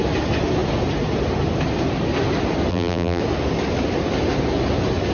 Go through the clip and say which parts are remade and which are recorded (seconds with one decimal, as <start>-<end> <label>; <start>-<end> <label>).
0.0-2.7 recorded; 2.7-3.2 remade; 3.2-5.1 recorded